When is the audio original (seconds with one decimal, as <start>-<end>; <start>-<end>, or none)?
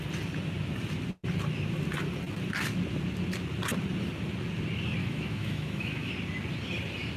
0.0-5.0; 6.1-7.2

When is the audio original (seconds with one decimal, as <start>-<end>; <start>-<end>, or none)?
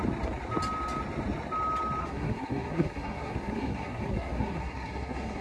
0.0-2.0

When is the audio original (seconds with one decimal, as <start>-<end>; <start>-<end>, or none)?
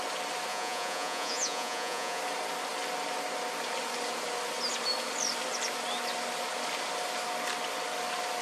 0.0-0.5; 2.2-8.4